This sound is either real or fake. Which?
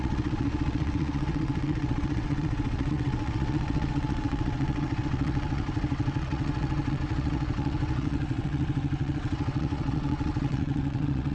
fake